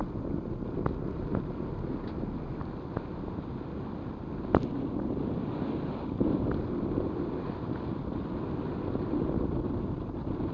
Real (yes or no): yes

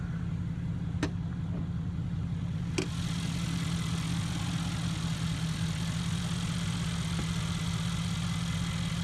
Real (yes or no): yes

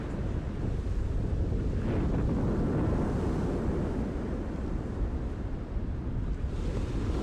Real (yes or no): yes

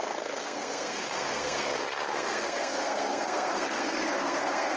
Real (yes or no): no